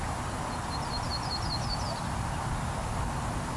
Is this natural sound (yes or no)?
no